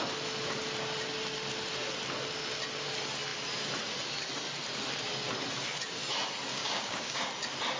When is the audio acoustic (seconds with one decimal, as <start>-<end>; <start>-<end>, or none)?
0.0-6.5; 7.3-7.8